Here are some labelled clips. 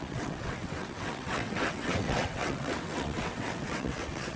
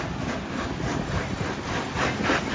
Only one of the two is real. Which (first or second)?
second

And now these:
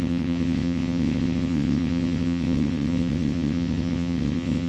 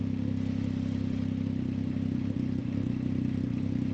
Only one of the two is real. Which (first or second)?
second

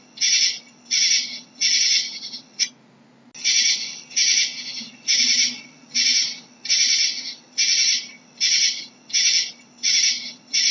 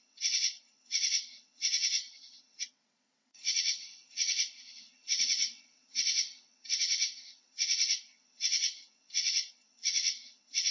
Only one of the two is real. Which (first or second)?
first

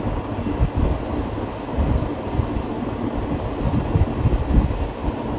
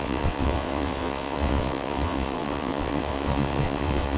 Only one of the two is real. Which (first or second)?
first